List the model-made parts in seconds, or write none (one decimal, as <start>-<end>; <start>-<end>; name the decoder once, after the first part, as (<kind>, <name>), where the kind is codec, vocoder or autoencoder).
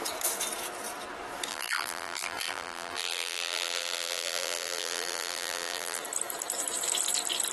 1.5-6.0 (vocoder, BigVGAN v2)